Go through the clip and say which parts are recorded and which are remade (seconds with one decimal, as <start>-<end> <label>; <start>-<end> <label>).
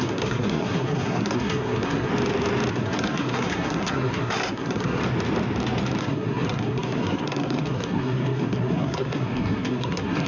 0.0-2.1 remade; 2.1-2.7 recorded; 2.7-5.0 remade; 5.0-6.0 recorded; 6.0-10.3 remade